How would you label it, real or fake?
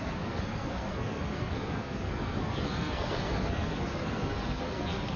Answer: fake